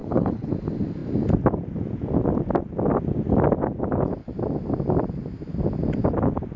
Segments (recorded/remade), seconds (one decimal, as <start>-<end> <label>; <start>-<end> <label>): 0.0-0.5 remade; 0.5-6.6 recorded